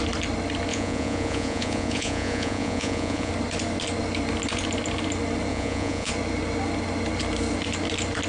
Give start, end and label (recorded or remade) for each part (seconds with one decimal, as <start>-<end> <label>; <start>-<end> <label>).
0.0-0.7 recorded; 0.7-3.3 remade; 3.3-5.5 recorded; 5.5-6.1 remade; 6.1-8.3 recorded